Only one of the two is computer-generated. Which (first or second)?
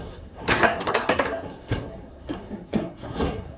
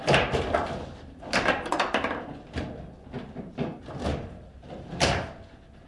first